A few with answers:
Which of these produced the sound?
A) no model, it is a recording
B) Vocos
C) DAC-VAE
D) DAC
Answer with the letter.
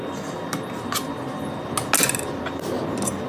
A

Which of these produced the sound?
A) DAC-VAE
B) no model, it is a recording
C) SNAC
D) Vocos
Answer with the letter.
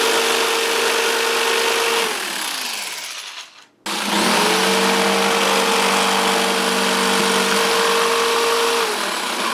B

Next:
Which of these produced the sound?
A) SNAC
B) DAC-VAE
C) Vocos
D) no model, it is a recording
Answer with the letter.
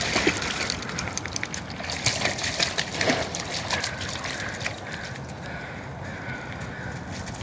D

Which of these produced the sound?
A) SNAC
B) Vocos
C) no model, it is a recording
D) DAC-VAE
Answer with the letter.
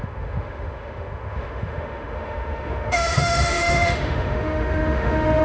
D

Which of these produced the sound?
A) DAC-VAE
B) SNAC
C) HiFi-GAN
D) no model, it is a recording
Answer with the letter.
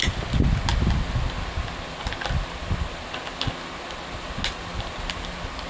D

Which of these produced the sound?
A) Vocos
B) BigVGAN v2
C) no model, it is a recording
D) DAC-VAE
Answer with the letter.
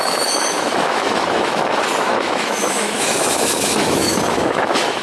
D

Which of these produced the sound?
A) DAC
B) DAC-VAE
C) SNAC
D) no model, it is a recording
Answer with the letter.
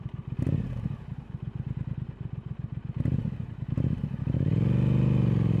D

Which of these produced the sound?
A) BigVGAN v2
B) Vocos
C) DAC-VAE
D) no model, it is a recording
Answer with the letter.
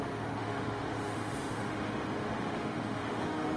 C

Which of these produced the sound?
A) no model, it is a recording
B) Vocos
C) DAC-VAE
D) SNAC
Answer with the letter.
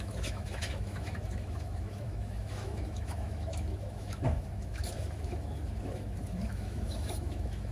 C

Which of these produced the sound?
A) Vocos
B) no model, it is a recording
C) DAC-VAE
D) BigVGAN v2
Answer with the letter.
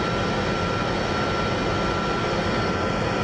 B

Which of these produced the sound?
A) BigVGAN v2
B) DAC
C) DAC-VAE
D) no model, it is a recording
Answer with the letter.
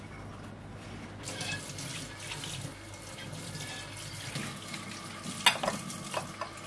D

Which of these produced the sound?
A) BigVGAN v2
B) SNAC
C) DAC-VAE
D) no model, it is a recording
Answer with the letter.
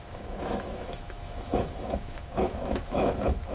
C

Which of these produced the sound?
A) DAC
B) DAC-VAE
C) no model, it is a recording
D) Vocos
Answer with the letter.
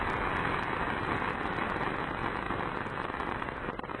C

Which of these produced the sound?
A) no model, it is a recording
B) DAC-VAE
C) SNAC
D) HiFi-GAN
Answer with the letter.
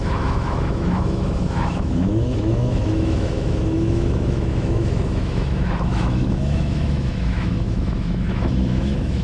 B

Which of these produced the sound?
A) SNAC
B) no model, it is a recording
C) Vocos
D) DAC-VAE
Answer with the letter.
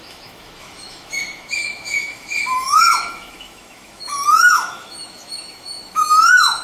D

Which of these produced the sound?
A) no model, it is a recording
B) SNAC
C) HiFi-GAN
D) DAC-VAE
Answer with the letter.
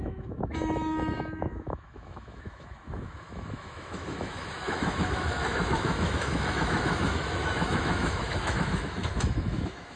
D